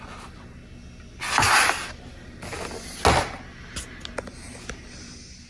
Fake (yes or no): no